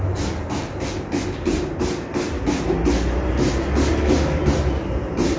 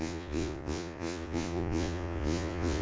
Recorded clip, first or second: first